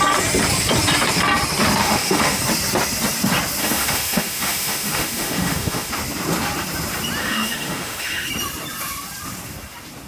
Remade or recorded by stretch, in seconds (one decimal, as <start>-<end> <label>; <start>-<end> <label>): 0.0-1.8 recorded; 1.8-2.4 remade; 2.4-3.6 recorded; 3.6-5.9 remade; 5.9-7.2 recorded; 7.2-8.3 remade; 8.3-10.1 recorded